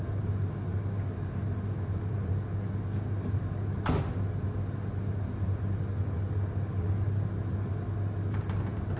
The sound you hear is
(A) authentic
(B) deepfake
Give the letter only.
A